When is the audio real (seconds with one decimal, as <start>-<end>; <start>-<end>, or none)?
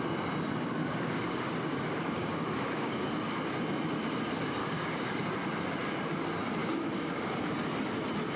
0.0-0.8; 3.0-4.6; 5.3-6.6; 7.3-8.4